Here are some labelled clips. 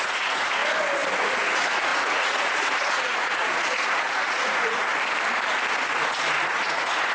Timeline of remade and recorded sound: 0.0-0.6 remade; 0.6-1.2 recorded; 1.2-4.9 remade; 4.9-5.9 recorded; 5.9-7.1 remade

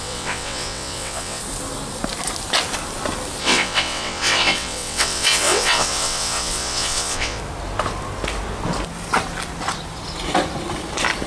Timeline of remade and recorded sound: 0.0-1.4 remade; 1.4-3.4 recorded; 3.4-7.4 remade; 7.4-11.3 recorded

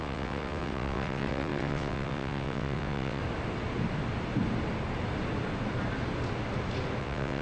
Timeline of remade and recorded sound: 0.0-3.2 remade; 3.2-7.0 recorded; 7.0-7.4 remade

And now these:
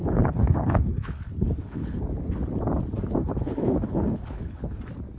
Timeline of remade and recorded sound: 0.0-2.0 remade; 2.0-3.2 recorded; 3.2-4.8 remade; 4.8-5.2 recorded

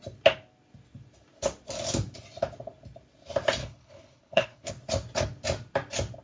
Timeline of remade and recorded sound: 0.0-3.6 recorded; 3.6-4.7 remade; 4.7-6.2 recorded

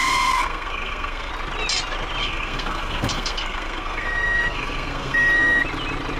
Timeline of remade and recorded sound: 0.0-1.3 remade; 1.3-2.2 recorded; 2.2-5.6 remade; 5.6-6.2 recorded

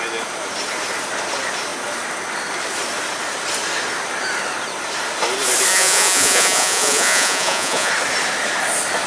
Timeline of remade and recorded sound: 0.0-5.7 recorded; 5.7-7.9 remade; 7.9-9.1 recorded